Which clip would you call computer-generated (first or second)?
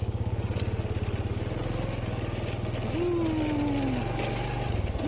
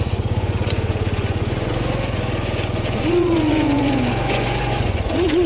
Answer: second